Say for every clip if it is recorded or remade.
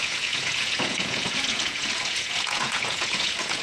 remade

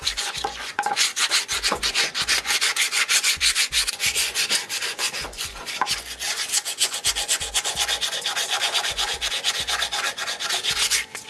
remade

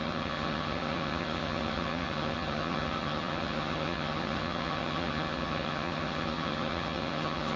remade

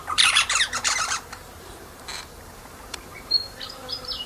remade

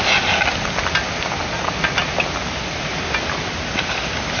recorded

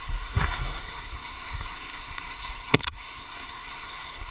remade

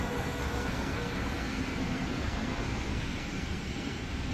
remade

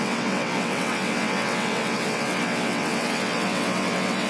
remade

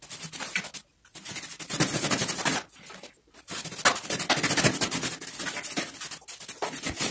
recorded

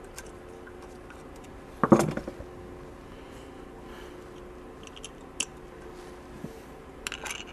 recorded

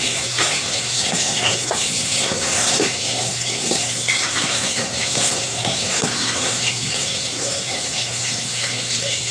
remade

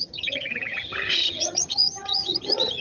remade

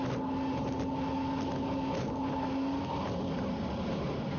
recorded